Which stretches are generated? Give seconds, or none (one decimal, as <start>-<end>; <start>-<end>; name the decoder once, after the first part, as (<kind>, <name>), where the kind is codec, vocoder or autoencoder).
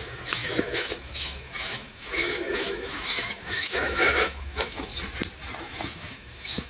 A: 0.0-4.9 (autoencoder, DAC-VAE); 5.6-6.7